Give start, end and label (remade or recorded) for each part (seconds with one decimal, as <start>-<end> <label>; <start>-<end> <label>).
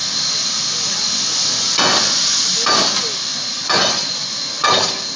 0.0-1.3 recorded; 1.3-2.4 remade; 2.4-3.3 recorded; 3.3-4.7 remade; 4.7-5.2 recorded